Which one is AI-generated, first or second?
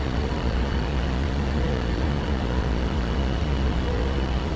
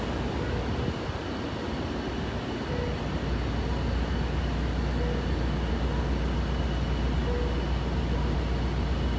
first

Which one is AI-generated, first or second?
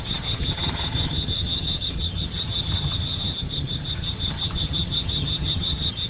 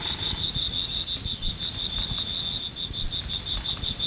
first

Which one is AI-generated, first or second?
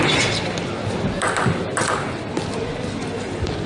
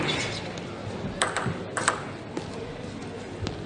first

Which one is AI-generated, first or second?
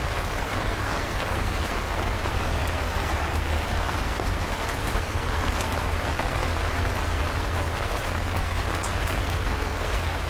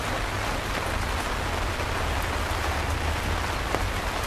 first